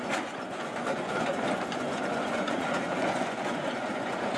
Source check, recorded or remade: remade